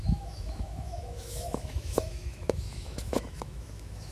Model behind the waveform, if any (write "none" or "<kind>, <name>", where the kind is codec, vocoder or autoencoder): autoencoder, DAC-VAE